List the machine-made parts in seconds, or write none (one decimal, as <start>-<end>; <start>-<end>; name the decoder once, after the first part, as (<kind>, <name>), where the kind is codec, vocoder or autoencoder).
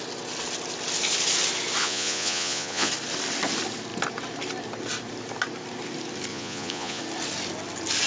1.8-2.9 (vocoder, Vocos); 6.3-7.0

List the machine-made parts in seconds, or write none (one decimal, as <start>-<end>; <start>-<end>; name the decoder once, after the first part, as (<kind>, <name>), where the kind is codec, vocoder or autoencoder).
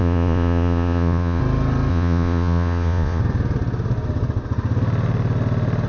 0.0-1.4 (vocoder, Vocos); 1.9-3.2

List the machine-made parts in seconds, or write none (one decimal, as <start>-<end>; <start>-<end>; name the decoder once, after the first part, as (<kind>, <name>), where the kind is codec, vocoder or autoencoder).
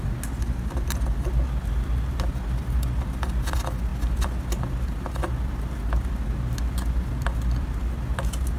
none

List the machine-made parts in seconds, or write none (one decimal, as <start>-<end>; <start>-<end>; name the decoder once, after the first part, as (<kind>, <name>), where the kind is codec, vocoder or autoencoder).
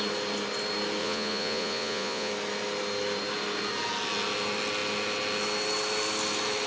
1.0-2.3 (vocoder, Vocos)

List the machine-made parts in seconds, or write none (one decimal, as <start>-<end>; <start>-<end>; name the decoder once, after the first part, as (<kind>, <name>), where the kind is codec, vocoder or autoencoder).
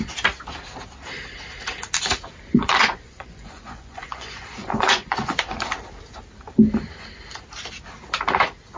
2.5-5.3 (vocoder, Vocos)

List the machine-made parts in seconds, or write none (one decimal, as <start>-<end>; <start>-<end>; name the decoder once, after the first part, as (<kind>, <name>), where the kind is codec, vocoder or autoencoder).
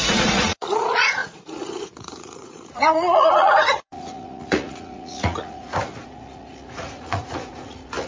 0.0-8.1 (vocoder, Vocos)